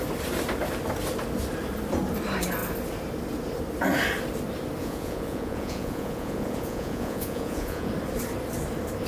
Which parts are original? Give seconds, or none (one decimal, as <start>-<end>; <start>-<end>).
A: 0.0-4.8; 7.9-9.1